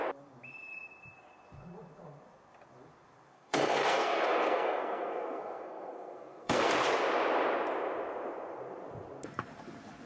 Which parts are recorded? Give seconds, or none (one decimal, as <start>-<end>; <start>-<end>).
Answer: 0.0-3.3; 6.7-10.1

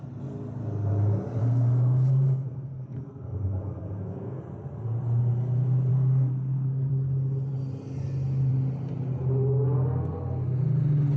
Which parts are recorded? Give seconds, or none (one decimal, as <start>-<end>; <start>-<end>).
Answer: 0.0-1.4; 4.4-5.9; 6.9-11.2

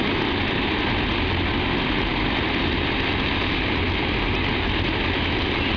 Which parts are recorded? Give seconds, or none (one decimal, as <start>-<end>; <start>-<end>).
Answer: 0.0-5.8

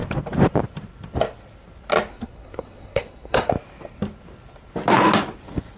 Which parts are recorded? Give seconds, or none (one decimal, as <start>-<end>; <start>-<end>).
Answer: 0.0-2.1; 3.5-5.8